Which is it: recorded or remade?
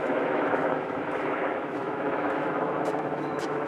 remade